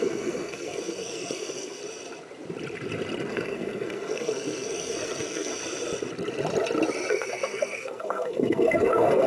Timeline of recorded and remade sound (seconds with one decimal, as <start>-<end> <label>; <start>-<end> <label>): 0.0-1.8 remade; 1.8-3.3 recorded; 3.3-5.5 remade; 5.5-7.1 recorded; 7.1-9.3 remade

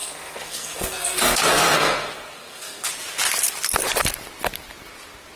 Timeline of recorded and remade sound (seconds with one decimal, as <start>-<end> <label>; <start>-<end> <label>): 0.0-2.9 remade; 2.9-5.4 recorded

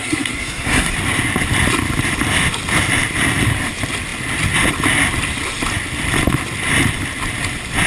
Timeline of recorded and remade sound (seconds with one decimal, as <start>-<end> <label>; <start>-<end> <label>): 0.0-0.9 remade; 0.9-7.9 recorded

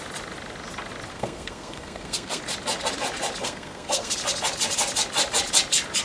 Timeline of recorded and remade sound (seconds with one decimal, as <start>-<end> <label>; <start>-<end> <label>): 0.0-1.1 recorded; 1.1-2.4 remade; 2.4-3.4 recorded; 3.4-4.1 remade; 4.1-6.0 recorded